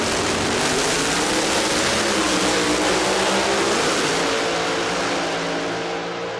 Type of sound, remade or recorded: recorded